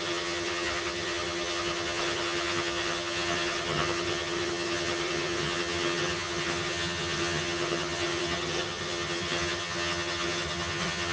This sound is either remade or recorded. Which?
remade